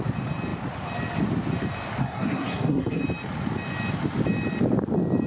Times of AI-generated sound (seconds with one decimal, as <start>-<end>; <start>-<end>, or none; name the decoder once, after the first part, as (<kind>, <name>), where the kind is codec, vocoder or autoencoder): 2.0-3.0 (codec, SNAC)